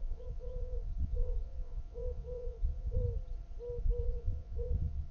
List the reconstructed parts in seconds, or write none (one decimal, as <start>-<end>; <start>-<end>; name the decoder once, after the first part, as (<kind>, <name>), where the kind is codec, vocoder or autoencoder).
0.0-3.0 (vocoder, Vocos); 4.0-5.1

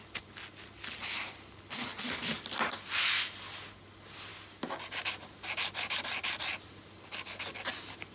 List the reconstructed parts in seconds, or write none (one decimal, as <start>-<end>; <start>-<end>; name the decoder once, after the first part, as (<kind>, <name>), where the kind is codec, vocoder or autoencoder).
none

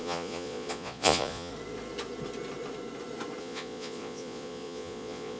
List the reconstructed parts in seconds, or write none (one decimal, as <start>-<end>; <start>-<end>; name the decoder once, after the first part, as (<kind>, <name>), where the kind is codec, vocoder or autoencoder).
0.0-1.5 (vocoder, Vocos); 3.4-5.4

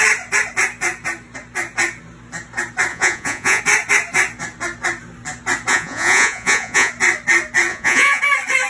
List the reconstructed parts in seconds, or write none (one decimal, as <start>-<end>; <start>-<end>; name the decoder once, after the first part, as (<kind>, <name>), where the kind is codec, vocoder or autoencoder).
2.9-3.6 (vocoder, Vocos); 5.7-6.9; 7.7-8.2